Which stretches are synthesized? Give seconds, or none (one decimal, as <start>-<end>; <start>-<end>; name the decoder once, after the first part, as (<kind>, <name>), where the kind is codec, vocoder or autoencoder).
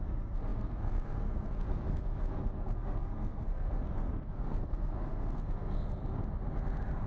0.0-6.0 (codec, SNAC)